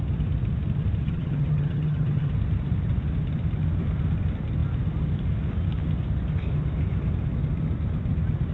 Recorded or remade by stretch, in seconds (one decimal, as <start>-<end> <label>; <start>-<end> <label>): 0.0-1.0 recorded; 1.0-2.3 remade; 2.3-8.5 recorded